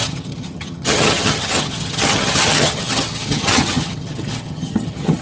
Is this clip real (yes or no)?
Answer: no